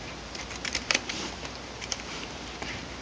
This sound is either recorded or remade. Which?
remade